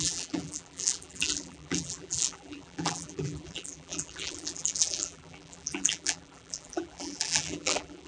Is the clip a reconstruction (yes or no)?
yes